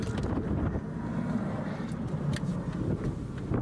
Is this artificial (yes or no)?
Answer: no